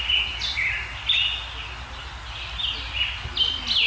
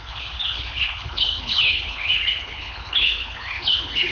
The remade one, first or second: second